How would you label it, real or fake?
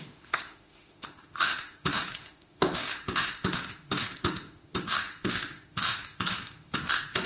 fake